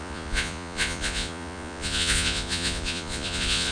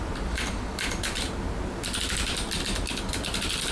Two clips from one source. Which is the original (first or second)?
second